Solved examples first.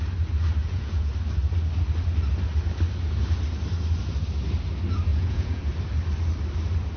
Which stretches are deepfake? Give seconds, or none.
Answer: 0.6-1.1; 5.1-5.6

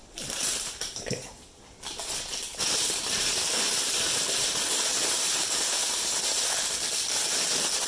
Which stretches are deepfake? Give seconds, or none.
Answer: 0.0-1.6; 2.5-6.2

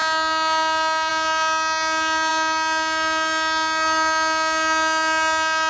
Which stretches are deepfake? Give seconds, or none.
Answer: none

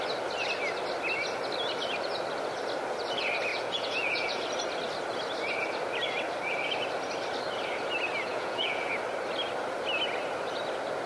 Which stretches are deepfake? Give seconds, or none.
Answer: 3.5-4.4; 8.3-8.9

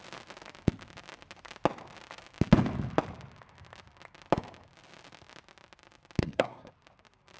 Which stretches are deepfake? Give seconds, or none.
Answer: 6.2-6.7

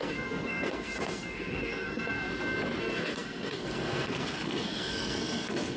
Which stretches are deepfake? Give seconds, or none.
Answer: 0.0-2.3; 2.8-5.8

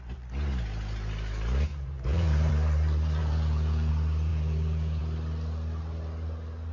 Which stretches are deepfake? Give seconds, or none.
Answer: 1.7-2.5; 3.2-3.9; 4.3-5.0

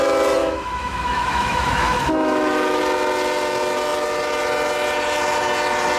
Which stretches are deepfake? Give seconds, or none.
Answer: 0.4-2.8